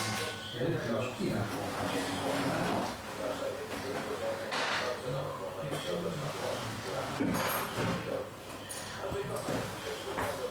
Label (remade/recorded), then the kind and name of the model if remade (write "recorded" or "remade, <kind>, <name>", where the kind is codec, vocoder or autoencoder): recorded